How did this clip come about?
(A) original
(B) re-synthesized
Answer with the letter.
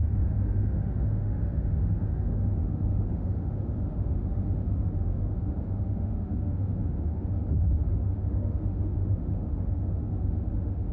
B